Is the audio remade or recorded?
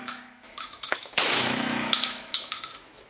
remade